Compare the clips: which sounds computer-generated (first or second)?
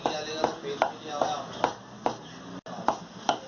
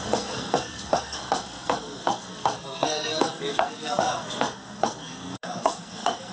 second